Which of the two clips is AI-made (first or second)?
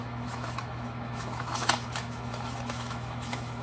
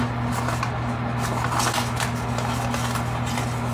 first